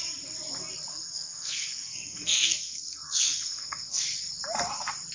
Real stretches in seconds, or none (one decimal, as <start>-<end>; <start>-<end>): 0.0-0.9; 4.0-5.1